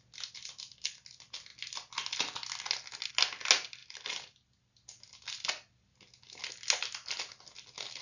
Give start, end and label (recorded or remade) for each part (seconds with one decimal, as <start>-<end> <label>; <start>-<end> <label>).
0.0-8.0 recorded

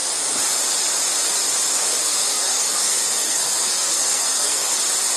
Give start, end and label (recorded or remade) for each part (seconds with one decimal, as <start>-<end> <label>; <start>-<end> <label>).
0.0-1.7 recorded; 1.7-4.8 remade; 4.8-5.2 recorded

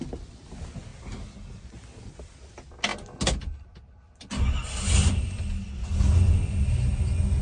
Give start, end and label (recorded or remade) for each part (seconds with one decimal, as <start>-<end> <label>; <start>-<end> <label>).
0.0-7.4 recorded

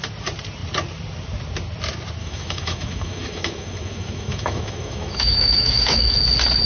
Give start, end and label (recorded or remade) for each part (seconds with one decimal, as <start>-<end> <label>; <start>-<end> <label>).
0.0-2.2 recorded; 2.2-6.2 remade; 6.2-6.7 recorded

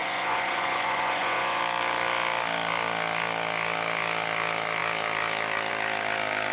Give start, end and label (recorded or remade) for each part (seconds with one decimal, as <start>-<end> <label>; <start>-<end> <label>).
0.0-1.6 remade; 1.6-6.5 recorded

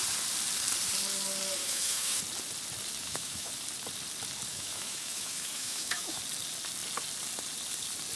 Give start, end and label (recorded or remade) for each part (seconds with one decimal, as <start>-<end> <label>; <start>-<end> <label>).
0.0-1.6 recorded; 1.6-2.2 remade; 2.2-3.0 recorded; 3.0-3.5 remade; 3.5-4.5 recorded; 4.5-6.2 remade; 6.2-8.2 recorded

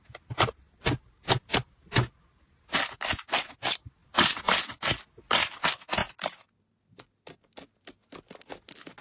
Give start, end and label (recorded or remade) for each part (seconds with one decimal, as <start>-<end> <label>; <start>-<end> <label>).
0.0-9.0 recorded